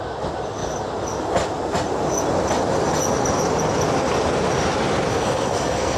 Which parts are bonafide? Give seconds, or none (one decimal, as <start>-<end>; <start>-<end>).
0.0-5.1